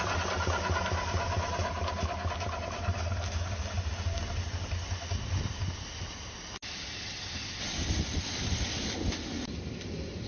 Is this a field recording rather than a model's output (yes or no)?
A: yes